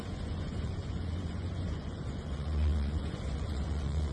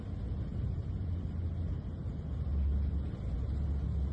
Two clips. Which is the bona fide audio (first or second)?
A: second